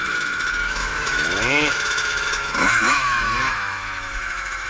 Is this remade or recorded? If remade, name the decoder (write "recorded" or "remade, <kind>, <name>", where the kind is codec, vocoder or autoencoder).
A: remade, autoencoder, DAC-VAE